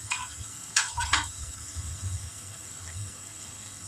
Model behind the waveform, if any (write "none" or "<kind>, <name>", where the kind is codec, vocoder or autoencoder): codec, SNAC